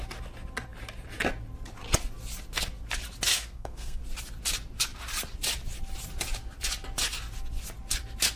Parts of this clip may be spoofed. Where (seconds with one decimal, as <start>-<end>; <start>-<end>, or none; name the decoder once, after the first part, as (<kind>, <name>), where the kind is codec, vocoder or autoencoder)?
3.3-4.0 (codec, SNAC)